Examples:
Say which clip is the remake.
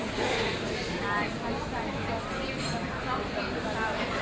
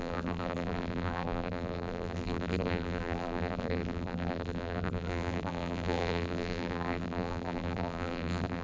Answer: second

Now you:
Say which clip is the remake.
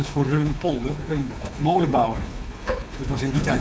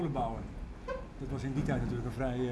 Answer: first